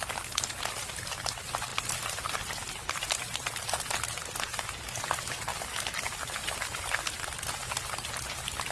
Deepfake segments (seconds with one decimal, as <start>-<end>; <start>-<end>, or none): 1.7-2.7; 5.5-8.1